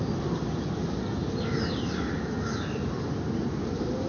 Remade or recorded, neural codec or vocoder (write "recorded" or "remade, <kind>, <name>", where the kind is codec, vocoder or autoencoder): recorded